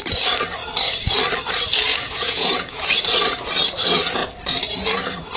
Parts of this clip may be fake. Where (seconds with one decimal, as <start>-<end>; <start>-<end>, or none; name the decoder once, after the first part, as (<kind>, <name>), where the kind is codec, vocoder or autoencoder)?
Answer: 1.9-3.0 (vocoder, Vocos)